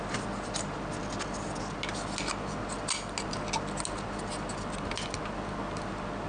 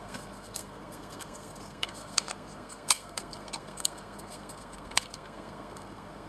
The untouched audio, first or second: first